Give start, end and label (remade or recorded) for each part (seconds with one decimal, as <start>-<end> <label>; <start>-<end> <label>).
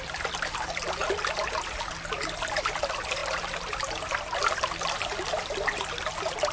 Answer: 0.0-6.5 recorded